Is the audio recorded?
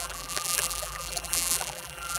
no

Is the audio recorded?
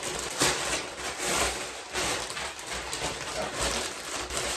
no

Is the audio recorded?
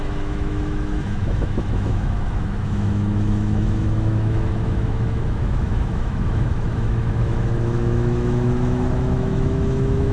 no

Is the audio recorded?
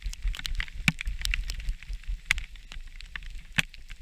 yes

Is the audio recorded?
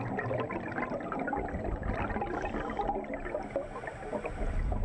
yes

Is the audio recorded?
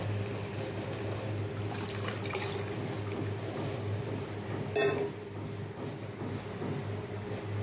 yes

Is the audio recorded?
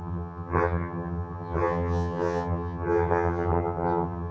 no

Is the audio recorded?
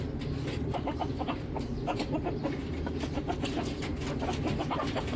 yes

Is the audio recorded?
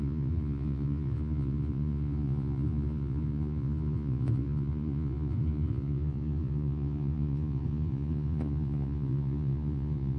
no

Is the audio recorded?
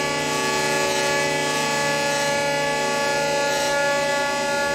yes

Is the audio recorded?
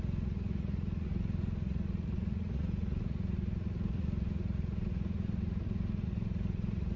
no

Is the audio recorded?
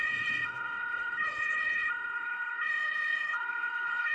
no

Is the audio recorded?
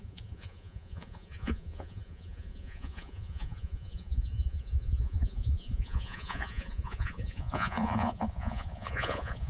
no